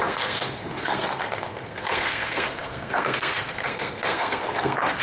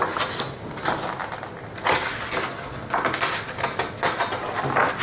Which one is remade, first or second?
first